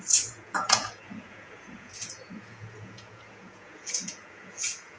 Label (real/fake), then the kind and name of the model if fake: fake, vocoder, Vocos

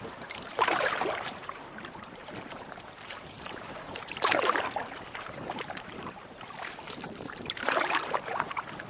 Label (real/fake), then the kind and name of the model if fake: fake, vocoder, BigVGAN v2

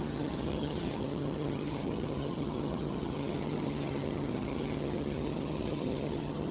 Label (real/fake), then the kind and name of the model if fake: fake, vocoder, HiFi-GAN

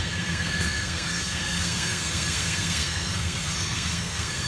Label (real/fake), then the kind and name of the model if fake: fake, codec, SNAC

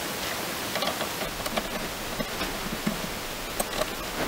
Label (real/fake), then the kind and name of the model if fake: real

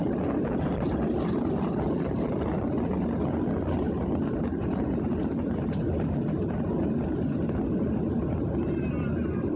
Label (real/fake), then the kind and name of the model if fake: real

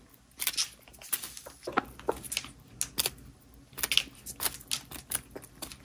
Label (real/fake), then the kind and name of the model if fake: real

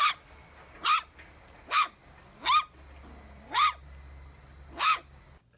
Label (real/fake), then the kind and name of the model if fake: real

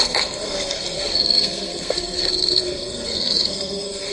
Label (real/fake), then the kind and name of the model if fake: fake, codec, SNAC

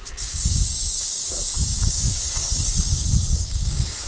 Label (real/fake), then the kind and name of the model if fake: fake, codec, DAC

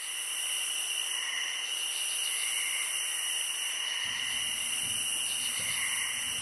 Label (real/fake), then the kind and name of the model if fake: real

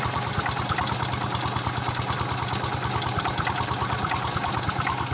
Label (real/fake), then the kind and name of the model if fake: real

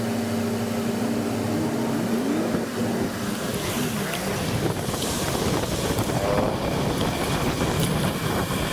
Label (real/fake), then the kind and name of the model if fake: real